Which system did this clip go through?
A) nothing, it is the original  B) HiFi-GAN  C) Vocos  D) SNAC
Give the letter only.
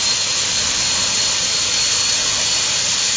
A